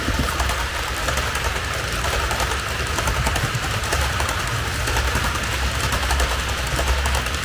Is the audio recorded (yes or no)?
yes